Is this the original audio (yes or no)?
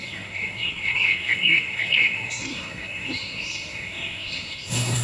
no